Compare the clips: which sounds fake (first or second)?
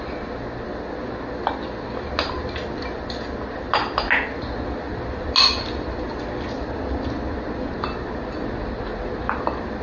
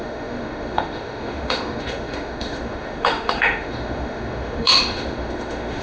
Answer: second